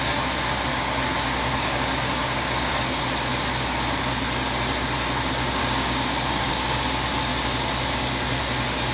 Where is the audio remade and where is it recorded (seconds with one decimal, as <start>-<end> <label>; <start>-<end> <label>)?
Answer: 0.0-0.7 recorded; 0.7-3.0 remade; 3.0-5.6 recorded; 5.6-6.5 remade; 6.5-8.9 recorded